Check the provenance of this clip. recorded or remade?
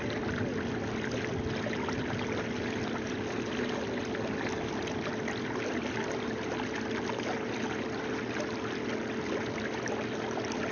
recorded